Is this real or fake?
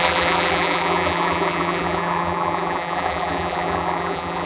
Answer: fake